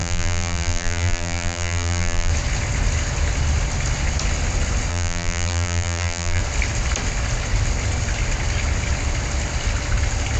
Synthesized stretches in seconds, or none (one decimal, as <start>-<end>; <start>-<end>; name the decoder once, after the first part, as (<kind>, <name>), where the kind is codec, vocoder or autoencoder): 0.0-2.3 (vocoder, BigVGAN v2); 4.9-6.4